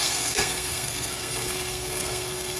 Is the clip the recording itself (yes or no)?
no